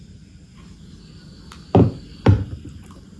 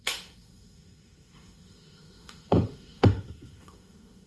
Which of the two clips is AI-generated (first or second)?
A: second